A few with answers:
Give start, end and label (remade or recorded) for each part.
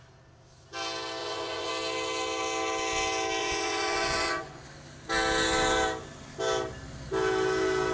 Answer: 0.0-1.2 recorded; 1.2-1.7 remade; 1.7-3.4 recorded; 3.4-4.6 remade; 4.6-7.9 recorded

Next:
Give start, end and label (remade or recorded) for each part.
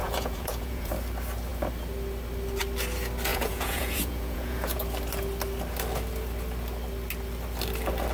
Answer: 0.0-0.9 remade; 0.9-3.3 recorded; 3.3-4.8 remade; 4.8-8.1 recorded